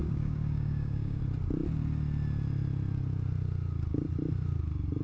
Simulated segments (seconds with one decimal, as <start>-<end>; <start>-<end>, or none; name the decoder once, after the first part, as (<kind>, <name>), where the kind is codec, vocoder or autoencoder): 0.0-1.2 (codec, DAC)